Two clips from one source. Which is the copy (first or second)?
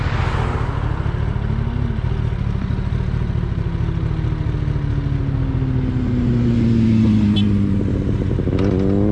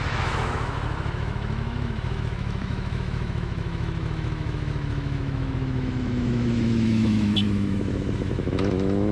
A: second